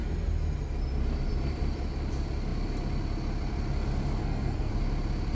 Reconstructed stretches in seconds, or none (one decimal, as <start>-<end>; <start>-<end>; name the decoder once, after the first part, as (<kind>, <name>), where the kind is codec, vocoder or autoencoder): 4.2-4.7 (codec, SNAC)